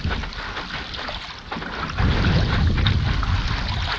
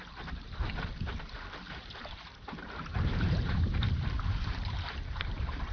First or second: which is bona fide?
first